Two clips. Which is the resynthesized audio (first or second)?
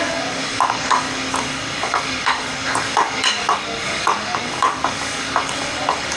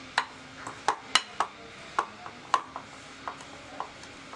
first